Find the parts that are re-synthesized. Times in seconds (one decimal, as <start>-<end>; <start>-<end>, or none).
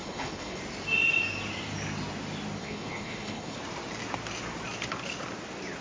0.0-0.6; 2.6-3.6